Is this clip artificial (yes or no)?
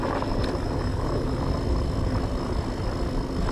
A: no